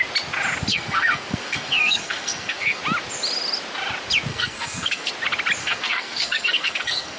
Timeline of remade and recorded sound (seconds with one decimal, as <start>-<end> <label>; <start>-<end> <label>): 0.0-0.7 recorded; 0.7-2.8 remade; 2.8-4.3 recorded; 4.3-5.1 remade; 5.1-5.6 recorded; 5.6-7.2 remade